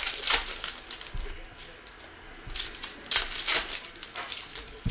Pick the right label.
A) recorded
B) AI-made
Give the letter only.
A